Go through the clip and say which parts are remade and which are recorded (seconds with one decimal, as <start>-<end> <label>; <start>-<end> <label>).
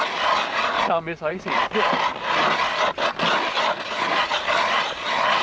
0.0-5.4 recorded